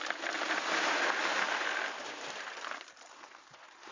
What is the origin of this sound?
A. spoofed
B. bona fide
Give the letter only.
B